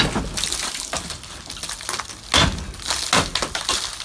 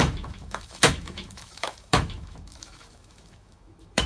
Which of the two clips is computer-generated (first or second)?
second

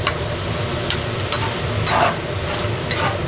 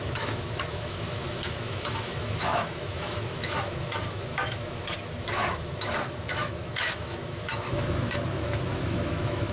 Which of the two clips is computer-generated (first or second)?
second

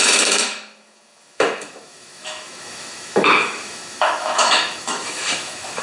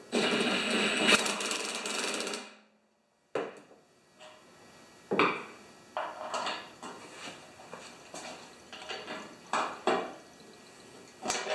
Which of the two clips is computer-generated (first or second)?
first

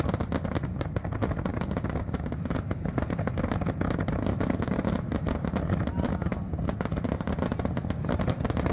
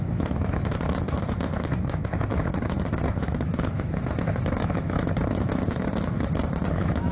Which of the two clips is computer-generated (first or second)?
second